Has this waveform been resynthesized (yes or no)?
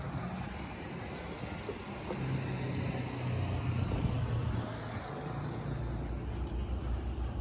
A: no